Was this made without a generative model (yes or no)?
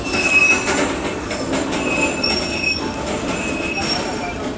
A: yes